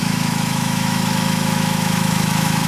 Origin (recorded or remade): remade